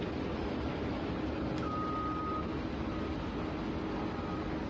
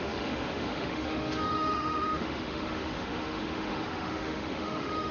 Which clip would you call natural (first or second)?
first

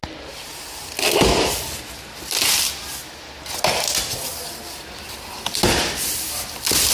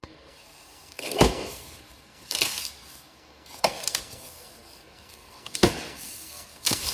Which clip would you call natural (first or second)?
first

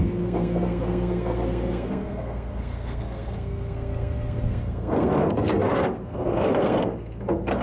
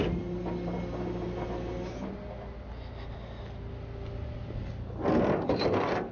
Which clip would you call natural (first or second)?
second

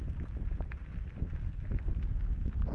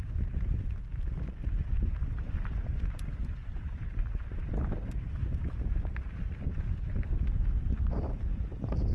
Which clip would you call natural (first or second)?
first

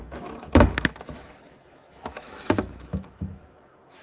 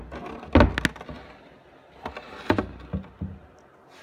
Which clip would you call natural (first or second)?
second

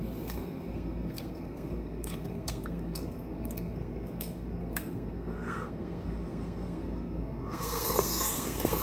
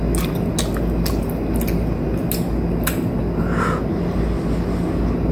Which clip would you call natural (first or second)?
second